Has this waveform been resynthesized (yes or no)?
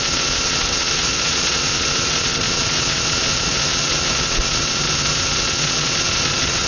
yes